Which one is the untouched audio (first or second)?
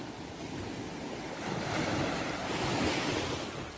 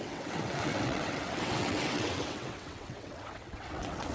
first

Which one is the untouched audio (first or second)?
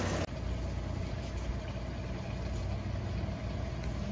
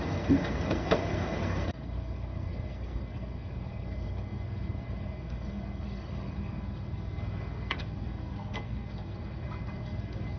first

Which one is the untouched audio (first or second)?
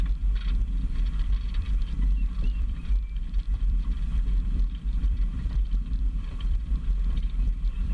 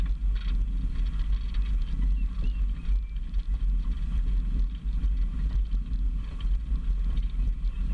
second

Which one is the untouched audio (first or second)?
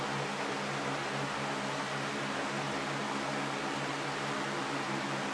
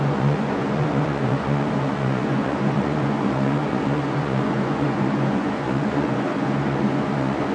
first